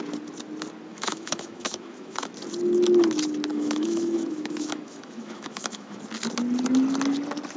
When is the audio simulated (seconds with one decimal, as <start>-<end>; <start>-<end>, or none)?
0.9-2.3; 3.5-6.0

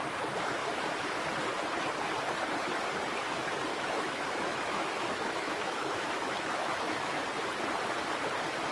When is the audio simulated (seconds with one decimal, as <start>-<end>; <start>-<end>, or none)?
3.7-7.2